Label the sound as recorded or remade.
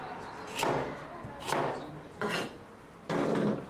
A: recorded